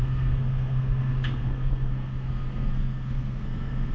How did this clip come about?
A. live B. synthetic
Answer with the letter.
B